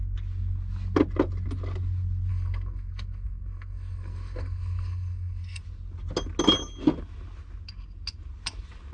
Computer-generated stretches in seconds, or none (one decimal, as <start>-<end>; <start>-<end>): 2.3-5.6